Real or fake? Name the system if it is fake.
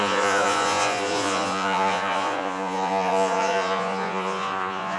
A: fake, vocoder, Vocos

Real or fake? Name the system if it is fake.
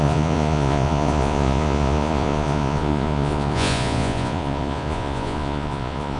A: fake, vocoder, Vocos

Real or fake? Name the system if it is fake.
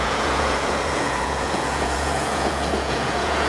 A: fake, vocoder, Vocos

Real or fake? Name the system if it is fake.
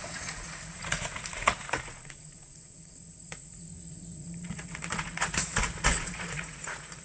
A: fake, vocoder, Vocos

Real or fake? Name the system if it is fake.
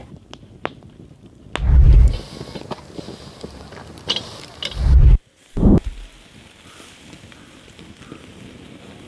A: real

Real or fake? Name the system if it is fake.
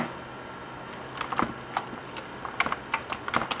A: real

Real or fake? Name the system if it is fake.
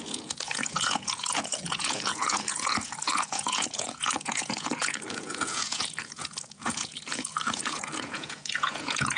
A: fake, vocoder, Vocos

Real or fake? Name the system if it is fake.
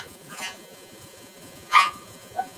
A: fake, vocoder, Vocos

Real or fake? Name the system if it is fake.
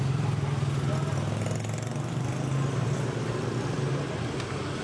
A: real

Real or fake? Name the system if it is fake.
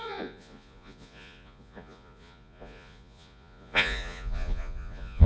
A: fake, vocoder, Vocos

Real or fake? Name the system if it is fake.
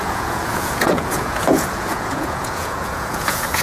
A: fake, vocoder, Vocos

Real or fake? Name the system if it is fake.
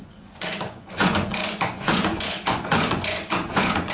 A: fake, vocoder, Vocos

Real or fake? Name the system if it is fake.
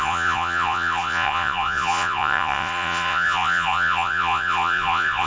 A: fake, vocoder, Vocos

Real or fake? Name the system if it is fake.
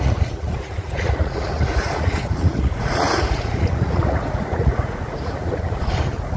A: fake, vocoder, Vocos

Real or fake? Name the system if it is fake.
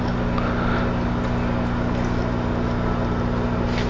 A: real